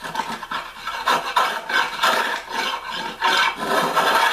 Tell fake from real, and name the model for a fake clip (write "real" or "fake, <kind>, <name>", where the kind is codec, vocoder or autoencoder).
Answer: real